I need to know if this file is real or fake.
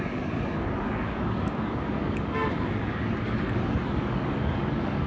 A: fake